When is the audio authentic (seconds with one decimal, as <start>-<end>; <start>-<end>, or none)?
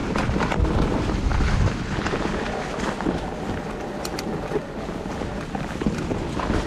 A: 0.0-6.7